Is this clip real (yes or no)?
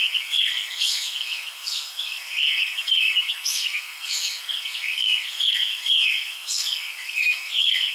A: no